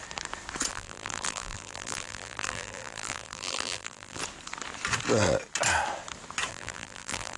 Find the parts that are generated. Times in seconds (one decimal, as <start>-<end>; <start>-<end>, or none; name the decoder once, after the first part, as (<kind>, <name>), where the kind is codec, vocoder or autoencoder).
0.7-4.2 (vocoder, BigVGAN v2); 6.5-7.4

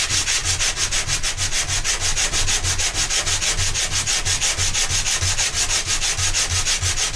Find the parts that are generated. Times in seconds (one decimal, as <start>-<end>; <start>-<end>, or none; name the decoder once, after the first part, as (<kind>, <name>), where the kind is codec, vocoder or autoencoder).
none

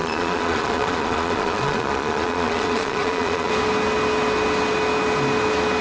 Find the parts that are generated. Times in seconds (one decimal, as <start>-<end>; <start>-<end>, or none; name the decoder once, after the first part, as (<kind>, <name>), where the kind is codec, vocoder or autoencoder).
0.0-3.5 (vocoder, Vocos)